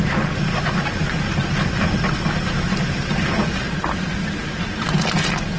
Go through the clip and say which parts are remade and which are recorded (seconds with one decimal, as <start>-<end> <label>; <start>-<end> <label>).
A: 0.0-5.6 recorded